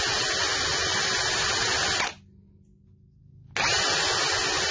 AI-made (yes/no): no